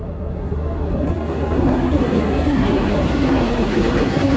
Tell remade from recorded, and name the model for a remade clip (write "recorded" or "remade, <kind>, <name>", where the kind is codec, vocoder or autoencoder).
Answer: remade, codec, SNAC